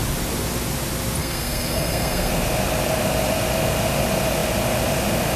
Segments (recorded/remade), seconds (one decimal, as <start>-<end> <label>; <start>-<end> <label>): 0.0-1.2 recorded; 1.2-2.3 remade; 2.3-5.4 recorded